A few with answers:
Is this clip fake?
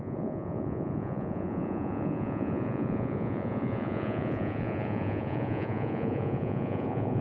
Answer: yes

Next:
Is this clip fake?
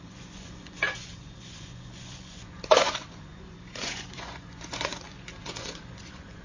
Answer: yes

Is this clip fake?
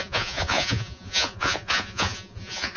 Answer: yes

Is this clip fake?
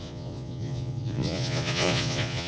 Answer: yes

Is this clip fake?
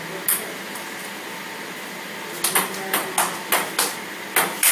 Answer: no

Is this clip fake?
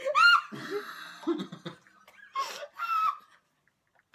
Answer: no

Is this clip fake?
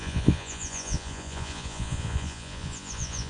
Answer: yes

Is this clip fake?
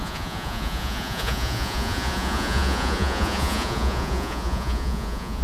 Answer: yes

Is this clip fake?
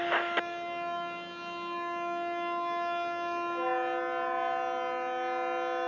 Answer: no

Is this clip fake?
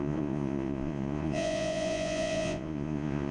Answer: yes